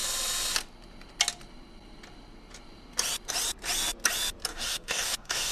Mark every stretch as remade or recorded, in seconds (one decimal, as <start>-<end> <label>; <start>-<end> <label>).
0.0-4.5 recorded; 4.5-5.5 remade